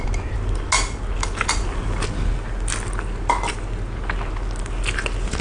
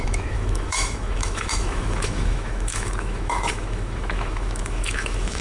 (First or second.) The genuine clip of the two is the first